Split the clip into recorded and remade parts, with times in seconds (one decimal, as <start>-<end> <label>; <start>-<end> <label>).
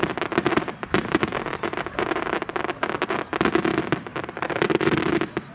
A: 0.0-3.1 remade; 3.1-4.1 recorded; 4.1-5.1 remade; 5.1-5.5 recorded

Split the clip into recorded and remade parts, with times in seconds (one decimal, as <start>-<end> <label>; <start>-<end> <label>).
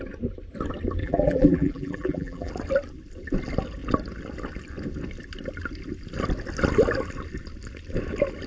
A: 0.0-1.0 recorded; 1.0-2.5 remade; 2.5-8.5 recorded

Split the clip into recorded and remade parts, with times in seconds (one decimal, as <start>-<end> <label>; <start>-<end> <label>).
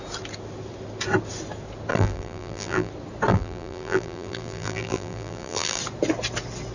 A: 0.0-1.9 recorded; 1.9-2.9 remade; 2.9-3.3 recorded; 3.3-5.8 remade; 5.8-6.7 recorded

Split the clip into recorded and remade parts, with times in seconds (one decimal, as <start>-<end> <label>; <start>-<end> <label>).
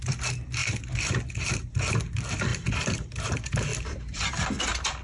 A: 0.0-0.6 recorded; 0.6-1.3 remade; 1.3-3.7 recorded; 3.7-4.6 remade; 4.6-5.0 recorded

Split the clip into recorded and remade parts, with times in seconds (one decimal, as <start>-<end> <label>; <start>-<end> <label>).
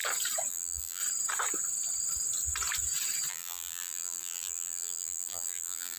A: 0.0-0.5 recorded; 0.5-1.0 remade; 1.0-3.3 recorded; 3.3-6.0 remade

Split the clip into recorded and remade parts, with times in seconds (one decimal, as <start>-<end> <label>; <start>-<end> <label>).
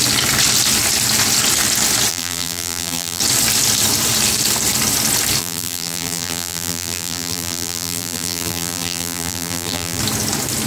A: 0.0-2.1 recorded; 2.1-3.2 remade; 3.2-5.4 recorded; 5.4-10.0 remade; 10.0-10.7 recorded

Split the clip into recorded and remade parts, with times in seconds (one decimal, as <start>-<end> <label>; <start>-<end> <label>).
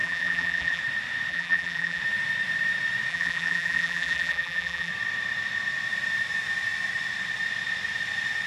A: 0.0-0.8 remade; 0.8-1.3 recorded; 1.3-2.0 remade; 2.0-3.1 recorded; 3.1-4.9 remade; 4.9-8.5 recorded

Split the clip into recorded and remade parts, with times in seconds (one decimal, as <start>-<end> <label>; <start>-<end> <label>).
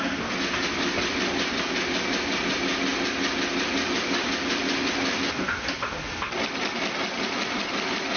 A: 0.0-4.6 recorded; 4.6-5.4 remade; 5.4-8.2 recorded